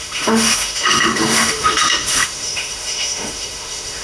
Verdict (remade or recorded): remade